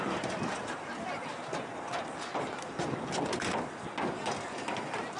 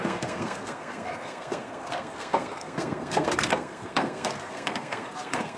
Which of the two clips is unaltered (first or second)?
first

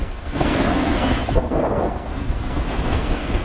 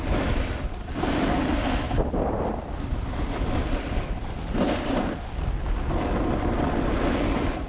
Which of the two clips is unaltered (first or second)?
second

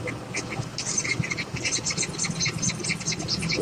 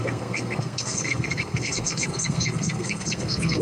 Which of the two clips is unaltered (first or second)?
first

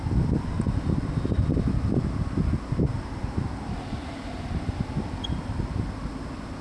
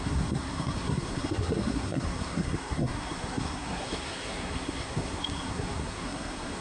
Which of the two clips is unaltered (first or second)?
first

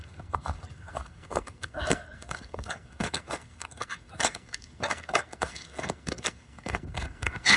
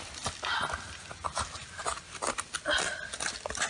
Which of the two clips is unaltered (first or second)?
second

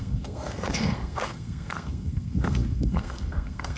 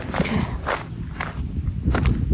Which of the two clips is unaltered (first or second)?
second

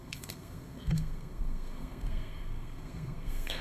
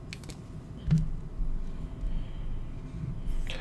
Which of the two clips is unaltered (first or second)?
second